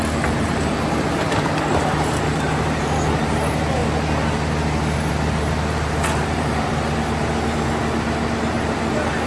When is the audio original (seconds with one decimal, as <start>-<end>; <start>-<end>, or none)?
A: 3.8-5.1; 6.7-9.3